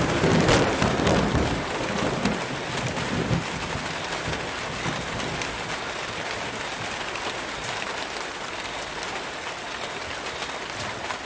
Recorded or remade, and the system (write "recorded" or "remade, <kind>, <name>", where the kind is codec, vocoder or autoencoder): recorded